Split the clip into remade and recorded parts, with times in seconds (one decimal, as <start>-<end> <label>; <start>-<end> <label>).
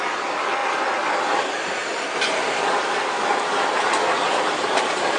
0.0-5.2 remade